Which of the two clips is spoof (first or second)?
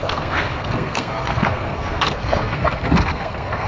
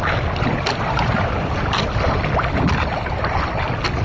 first